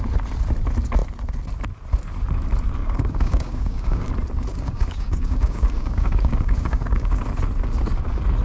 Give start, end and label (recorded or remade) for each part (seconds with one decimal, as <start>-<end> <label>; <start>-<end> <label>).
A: 0.0-2.8 recorded; 2.8-4.1 remade; 4.1-4.5 recorded; 4.5-7.2 remade; 7.2-8.4 recorded